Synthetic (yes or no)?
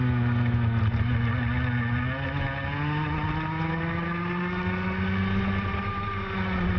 no